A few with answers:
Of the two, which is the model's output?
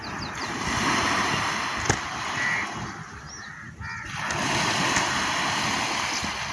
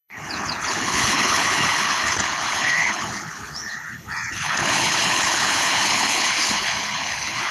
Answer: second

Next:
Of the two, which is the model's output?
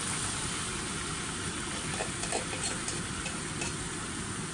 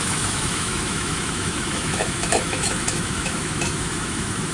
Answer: second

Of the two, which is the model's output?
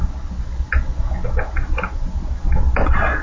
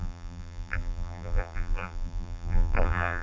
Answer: second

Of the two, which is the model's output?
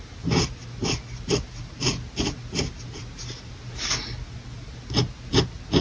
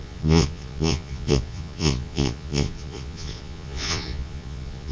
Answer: second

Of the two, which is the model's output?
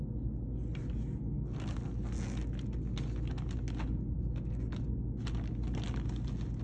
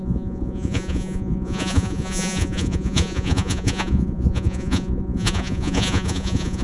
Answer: second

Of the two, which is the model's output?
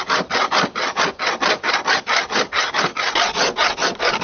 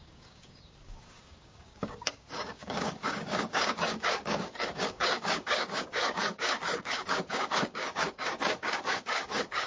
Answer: second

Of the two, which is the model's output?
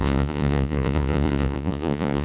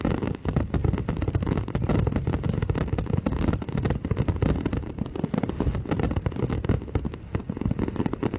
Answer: first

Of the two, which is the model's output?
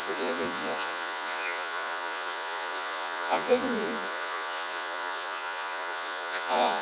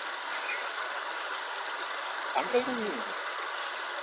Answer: first